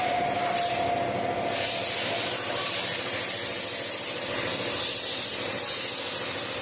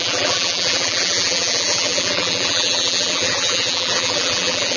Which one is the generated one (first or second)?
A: second